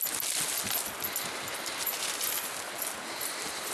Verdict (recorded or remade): recorded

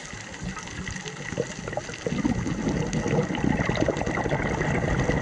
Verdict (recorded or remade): recorded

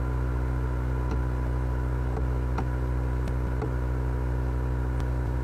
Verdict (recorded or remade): recorded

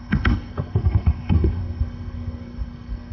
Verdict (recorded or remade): remade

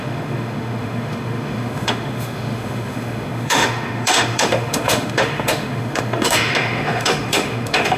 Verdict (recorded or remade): remade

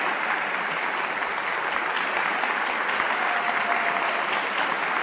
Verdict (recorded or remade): recorded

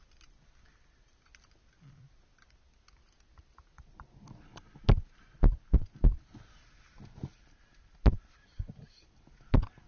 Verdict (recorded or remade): recorded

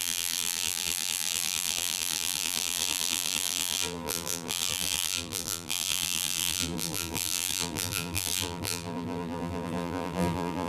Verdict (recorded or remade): remade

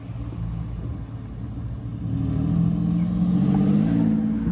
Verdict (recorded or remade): recorded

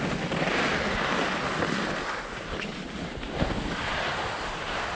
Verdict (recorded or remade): recorded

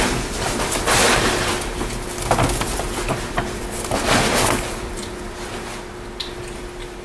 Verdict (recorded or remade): recorded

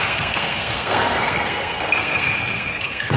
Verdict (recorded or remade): remade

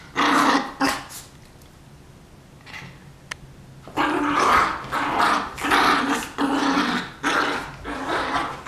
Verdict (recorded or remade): recorded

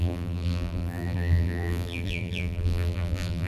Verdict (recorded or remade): remade